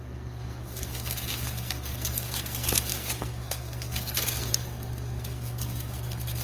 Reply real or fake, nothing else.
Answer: fake